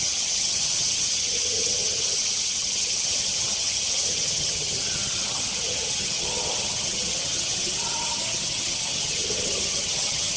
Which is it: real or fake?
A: fake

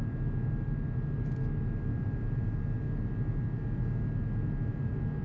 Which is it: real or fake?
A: real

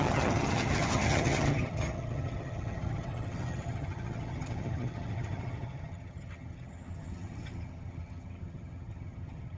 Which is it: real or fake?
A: fake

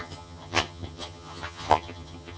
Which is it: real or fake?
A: fake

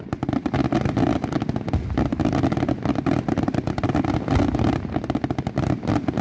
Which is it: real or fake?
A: real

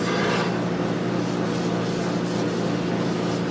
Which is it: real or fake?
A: real